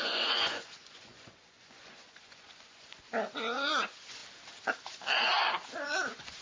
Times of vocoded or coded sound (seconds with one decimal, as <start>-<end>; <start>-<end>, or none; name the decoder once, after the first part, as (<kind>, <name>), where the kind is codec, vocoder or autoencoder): 0.0-4.2 (vocoder, Vocos); 5.4-6.4